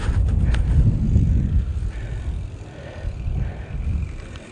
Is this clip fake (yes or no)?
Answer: no